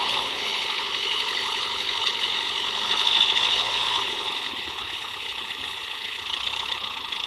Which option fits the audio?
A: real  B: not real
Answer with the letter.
B